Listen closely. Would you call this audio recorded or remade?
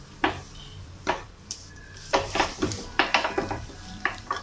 remade